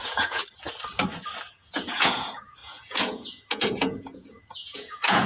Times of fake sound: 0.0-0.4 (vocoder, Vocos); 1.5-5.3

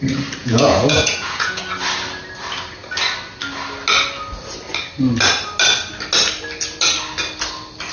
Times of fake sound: 0.4-1.6 (vocoder, Vocos)

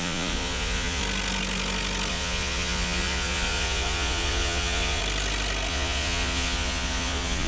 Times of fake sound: 0.0-1.0 (vocoder, Vocos); 2.1-5.0; 5.7-7.5

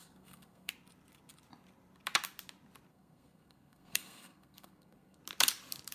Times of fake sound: 0.0-0.7 (codec, SNAC); 2.9-5.2

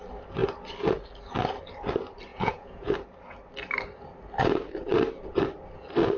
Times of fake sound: 2.3-2.9 (vocoder, Vocos)

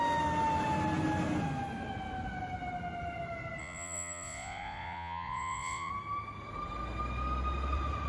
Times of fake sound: 3.6-5.9 (vocoder, Vocos)

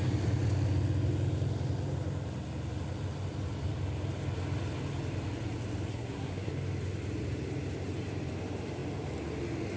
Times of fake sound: 5.9-6.5 (codec, SNAC)

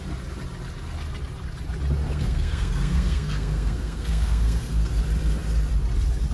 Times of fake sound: 2.1-5.0 (codec, SNAC)